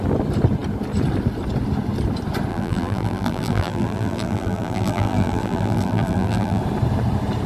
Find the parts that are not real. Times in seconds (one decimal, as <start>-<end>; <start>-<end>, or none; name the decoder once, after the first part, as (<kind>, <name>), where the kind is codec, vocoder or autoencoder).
2.5-6.6 (vocoder, BigVGAN v2)